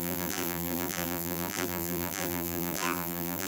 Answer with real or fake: fake